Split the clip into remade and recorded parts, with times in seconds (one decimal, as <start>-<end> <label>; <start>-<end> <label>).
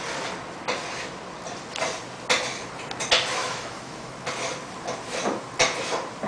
0.0-3.3 recorded; 3.3-4.1 remade; 4.1-6.3 recorded